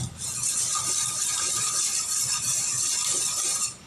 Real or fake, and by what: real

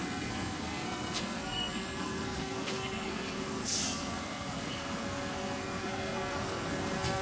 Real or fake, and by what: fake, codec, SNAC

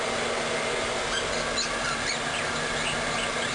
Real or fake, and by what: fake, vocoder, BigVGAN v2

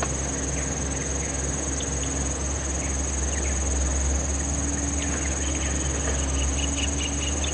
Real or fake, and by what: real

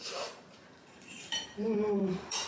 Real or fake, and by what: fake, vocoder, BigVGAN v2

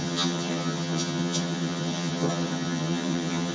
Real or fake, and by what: fake, vocoder, HiFi-GAN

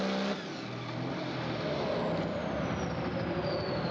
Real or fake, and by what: real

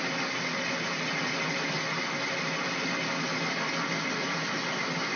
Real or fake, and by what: real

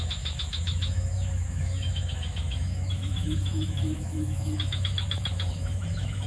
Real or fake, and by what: fake, autoencoder, DAC-VAE